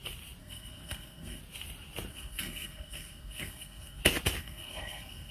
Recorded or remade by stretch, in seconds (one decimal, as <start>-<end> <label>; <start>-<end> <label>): 0.0-0.4 recorded; 0.4-1.4 remade; 1.4-2.1 recorded; 2.1-4.0 remade; 4.0-4.4 recorded; 4.4-5.3 remade